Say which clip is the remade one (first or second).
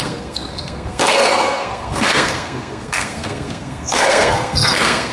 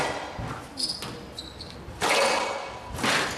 first